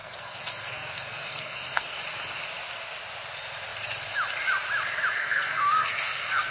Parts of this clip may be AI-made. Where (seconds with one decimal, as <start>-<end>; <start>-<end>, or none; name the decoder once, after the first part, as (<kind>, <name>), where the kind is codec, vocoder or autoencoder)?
0.0-2.0 (codec, SNAC); 5.2-6.5

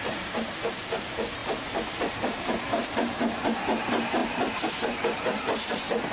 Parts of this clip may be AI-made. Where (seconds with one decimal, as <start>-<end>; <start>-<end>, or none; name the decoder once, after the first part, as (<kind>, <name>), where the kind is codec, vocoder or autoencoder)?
0.0-1.4 (vocoder, BigVGAN v2); 2.1-4.2; 4.7-6.1

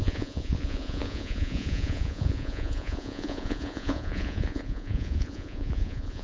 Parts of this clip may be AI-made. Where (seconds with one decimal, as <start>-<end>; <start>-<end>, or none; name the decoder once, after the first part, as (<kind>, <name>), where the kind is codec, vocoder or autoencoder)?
0.0-6.2 (vocoder, Vocos)

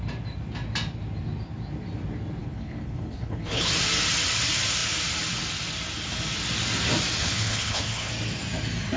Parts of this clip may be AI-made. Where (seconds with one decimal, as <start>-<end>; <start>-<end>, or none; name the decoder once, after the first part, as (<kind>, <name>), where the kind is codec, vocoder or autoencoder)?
2.4-3.7 (codec, HILCodec); 7.2-8.1

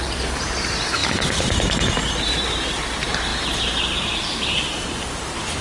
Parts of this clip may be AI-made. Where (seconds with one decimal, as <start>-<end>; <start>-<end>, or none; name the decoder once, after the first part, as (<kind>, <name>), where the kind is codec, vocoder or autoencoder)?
0.0-5.6 (vocoder, BigVGAN v2)

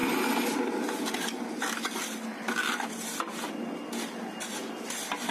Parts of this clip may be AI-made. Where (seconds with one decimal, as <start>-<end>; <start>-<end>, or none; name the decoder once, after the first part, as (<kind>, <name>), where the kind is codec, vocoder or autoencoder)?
none